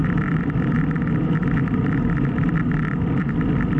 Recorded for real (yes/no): no